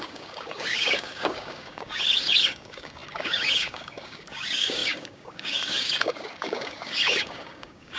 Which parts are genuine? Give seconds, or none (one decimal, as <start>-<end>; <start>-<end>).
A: none